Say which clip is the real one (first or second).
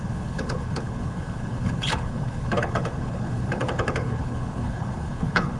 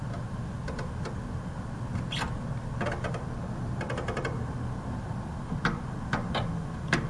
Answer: second